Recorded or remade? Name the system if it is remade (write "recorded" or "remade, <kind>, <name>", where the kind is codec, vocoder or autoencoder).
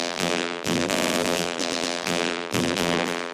remade, vocoder, BigVGAN v2